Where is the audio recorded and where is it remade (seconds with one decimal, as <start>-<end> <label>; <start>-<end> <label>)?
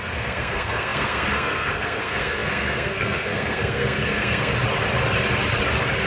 0.0-4.5 remade; 4.5-6.1 recorded